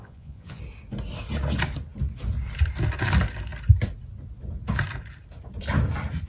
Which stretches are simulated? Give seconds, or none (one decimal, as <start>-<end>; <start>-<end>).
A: 0.0-0.6